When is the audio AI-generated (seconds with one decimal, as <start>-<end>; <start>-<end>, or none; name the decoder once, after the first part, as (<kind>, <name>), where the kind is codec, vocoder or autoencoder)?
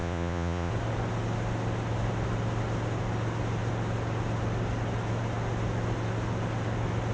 0.0-0.7 (vocoder, Vocos)